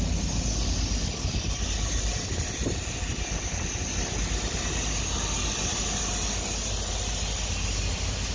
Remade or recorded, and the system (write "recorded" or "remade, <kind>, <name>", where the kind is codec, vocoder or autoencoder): recorded